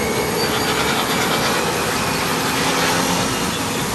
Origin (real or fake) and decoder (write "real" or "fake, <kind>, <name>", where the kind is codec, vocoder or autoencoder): real